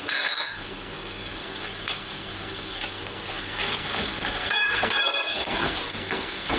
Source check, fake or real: fake